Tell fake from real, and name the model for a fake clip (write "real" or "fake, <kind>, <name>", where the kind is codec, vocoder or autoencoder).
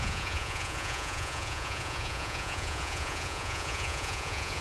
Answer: fake, vocoder, Vocos